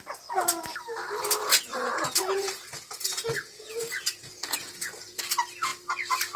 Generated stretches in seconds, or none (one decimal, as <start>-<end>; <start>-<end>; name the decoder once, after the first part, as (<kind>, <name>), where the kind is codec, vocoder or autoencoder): 1.4-5.2 (vocoder, Vocos)